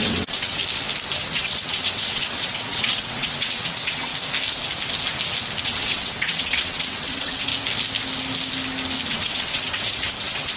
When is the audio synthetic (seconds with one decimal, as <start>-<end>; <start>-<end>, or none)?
0.0-0.6; 1.2-4.1; 5.6-7.5; 9.1-10.6